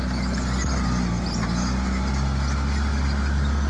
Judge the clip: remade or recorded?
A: recorded